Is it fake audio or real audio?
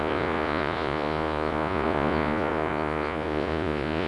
fake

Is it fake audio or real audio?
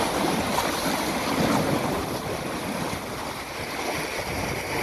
real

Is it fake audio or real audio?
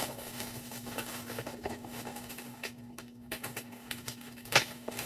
fake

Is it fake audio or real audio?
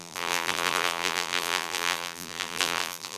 fake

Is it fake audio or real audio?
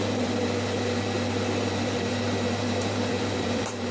fake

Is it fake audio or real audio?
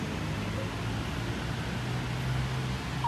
real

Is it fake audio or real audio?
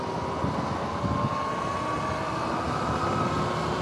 real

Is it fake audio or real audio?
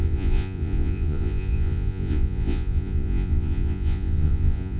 fake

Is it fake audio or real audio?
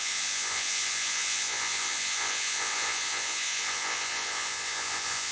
fake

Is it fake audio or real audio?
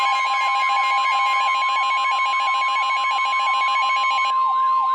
real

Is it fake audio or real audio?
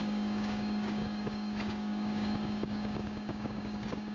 fake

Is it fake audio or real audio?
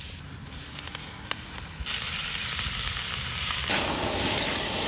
real